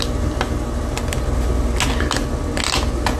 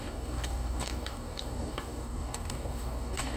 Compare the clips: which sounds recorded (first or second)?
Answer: first